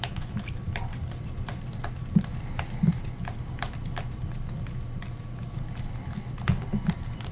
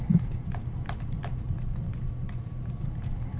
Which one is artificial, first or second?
second